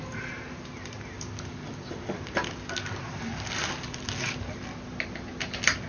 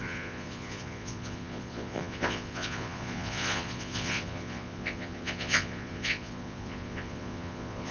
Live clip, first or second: first